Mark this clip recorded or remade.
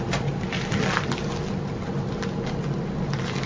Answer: recorded